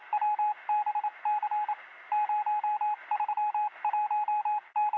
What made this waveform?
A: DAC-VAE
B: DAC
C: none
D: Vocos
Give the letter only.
C